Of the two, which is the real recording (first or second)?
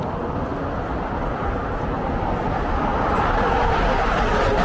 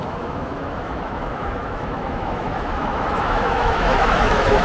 first